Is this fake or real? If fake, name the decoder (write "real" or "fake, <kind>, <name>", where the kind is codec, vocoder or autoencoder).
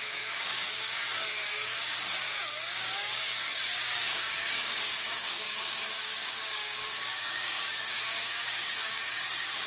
fake, codec, DAC